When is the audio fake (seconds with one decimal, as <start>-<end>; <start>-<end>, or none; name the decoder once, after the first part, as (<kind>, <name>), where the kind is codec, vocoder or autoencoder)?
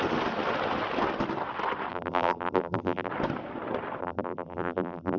1.9-3.1 (vocoder, BigVGAN v2); 4.0-5.2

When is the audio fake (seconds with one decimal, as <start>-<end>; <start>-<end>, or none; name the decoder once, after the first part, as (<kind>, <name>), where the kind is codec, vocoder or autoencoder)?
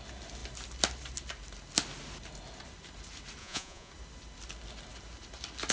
3.4-3.9 (vocoder, Vocos)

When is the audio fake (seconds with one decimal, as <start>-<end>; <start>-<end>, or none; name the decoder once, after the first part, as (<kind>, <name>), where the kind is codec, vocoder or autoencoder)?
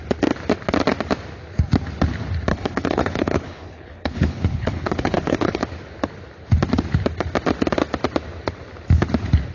2.5-5.6 (codec, HILCodec)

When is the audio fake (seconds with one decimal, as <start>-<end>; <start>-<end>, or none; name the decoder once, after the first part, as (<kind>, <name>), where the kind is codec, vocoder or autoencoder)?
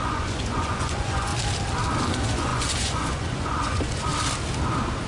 0.0-1.3 (vocoder, Vocos); 2.1-4.1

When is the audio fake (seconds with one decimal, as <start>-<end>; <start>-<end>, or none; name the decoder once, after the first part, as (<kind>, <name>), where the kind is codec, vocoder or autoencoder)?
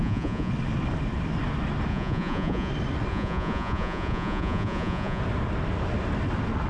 0.0-0.5 (vocoder, Vocos); 1.9-2.7; 3.1-5.2